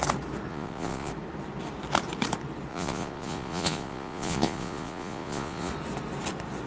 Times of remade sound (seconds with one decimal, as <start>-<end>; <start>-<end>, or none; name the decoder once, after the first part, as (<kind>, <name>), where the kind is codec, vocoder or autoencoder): 0.5-1.1 (vocoder, Vocos); 2.7-5.7

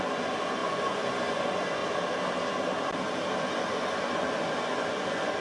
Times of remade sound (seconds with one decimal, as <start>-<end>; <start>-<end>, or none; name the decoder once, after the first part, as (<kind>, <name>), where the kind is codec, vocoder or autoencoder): 0.0-1.8 (vocoder, Vocos); 3.4-5.4